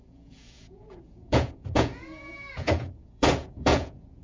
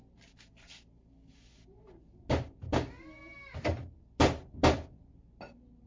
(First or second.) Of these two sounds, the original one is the second